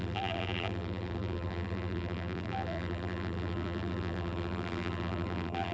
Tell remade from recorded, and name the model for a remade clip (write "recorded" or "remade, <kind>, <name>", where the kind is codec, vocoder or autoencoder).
remade, vocoder, BigVGAN v2